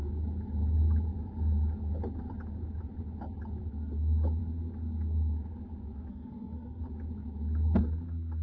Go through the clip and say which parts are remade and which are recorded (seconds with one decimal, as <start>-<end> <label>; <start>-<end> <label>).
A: 0.0-6.1 recorded; 6.1-6.8 remade; 6.8-8.4 recorded